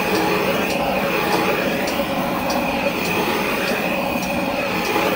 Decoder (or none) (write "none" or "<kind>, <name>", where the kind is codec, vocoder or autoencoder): vocoder, BigVGAN v2